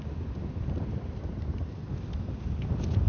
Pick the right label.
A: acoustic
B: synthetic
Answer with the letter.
A